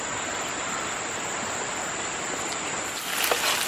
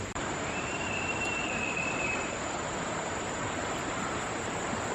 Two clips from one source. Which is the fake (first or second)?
second